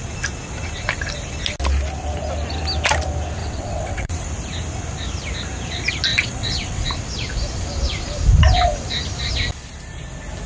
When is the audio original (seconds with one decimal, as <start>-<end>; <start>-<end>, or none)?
0.0-3.4; 4.3-6.1; 6.9-10.5